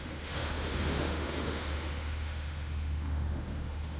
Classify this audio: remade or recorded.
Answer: remade